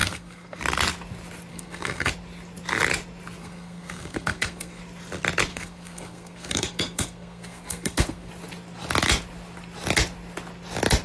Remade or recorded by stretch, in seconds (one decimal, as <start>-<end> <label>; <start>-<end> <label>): 0.0-0.6 remade; 0.6-1.5 recorded; 1.5-2.1 remade; 2.1-3.4 recorded; 3.4-4.8 remade; 4.8-5.5 recorded; 5.5-8.3 remade; 8.3-11.0 recorded